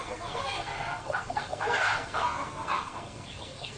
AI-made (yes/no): yes